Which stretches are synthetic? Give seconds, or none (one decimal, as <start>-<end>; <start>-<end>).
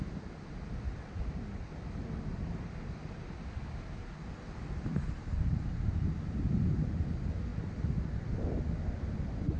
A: none